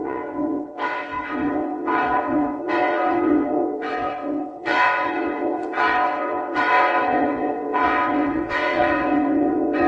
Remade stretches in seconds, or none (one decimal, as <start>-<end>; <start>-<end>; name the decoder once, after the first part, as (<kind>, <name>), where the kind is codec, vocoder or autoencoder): 0.0-9.9 (vocoder, WaveNeXt)